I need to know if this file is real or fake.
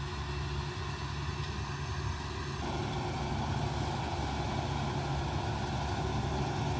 real